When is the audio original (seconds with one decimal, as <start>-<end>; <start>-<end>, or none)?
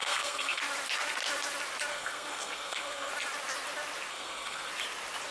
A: 0.6-1.9; 3.1-4.1; 4.7-5.3